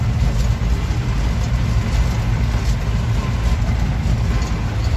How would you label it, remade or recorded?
recorded